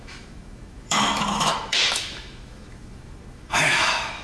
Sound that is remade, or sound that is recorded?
remade